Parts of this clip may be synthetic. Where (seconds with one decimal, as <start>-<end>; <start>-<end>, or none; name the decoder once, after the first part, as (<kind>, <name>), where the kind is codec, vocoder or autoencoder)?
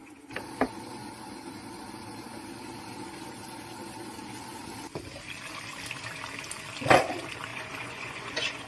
7.5-8.7 (vocoder, Vocos)